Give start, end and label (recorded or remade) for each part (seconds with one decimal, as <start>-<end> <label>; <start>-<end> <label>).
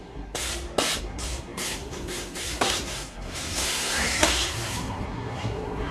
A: 0.0-0.5 remade; 0.5-1.0 recorded; 1.0-5.9 remade